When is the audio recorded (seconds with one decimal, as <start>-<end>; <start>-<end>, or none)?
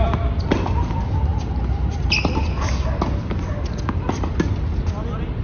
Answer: 0.0-5.4